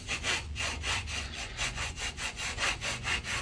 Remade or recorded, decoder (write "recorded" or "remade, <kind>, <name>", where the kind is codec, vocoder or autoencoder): remade, vocoder, Vocos